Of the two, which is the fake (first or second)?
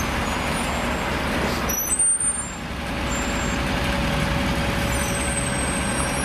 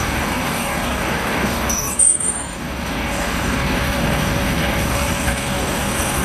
second